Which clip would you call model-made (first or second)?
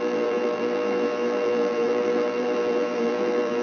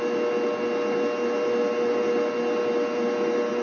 first